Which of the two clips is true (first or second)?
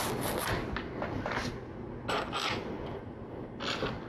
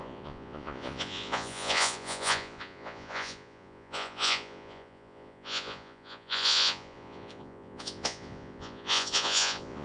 first